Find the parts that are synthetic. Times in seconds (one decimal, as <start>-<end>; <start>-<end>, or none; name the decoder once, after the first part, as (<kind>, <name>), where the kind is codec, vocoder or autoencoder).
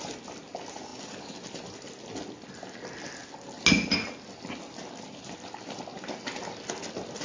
none